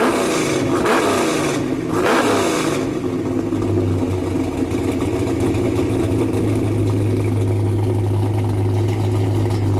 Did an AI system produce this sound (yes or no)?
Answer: no